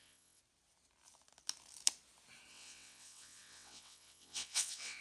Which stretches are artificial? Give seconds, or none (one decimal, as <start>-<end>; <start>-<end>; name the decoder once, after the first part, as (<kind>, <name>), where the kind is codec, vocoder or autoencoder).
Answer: 0.0-0.4 (vocoder, WaveNeXt); 2.5-5.0